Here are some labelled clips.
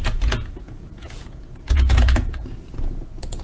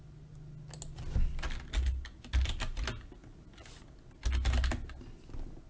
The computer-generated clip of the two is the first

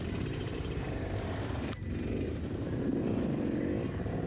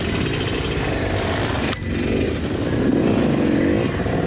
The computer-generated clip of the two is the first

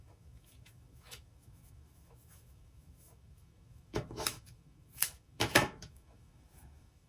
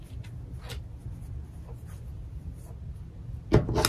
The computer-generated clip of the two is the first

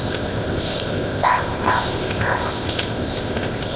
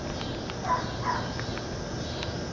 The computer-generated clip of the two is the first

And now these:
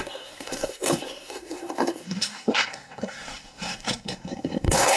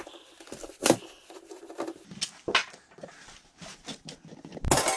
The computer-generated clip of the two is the first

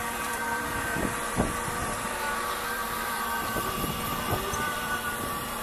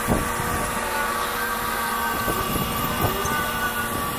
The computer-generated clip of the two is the first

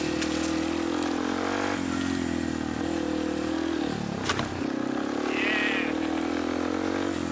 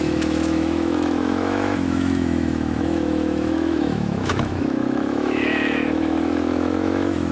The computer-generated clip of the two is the second